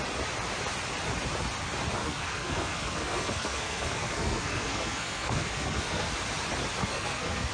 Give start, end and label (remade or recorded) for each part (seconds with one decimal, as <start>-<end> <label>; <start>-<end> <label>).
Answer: 0.0-2.0 recorded; 2.0-6.1 remade; 6.1-6.8 recorded; 6.8-7.5 remade